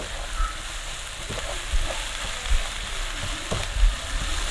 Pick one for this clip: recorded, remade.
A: recorded